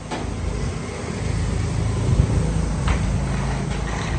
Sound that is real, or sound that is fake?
real